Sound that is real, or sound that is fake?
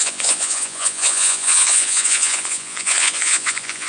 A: fake